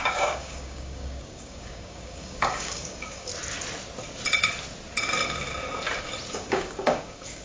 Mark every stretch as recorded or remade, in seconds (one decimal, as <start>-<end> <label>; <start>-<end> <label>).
0.0-3.3 remade; 3.3-6.3 recorded; 6.3-7.4 remade